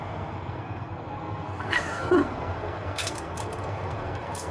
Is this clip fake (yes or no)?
yes